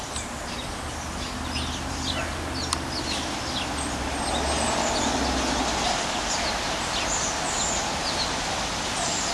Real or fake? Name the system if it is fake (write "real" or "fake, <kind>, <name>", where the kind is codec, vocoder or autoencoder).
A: real